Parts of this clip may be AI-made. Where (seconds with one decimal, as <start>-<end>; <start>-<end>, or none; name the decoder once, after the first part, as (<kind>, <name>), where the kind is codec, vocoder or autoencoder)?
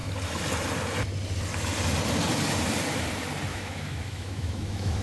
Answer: 3.5-5.0 (autoencoder, DAC-VAE)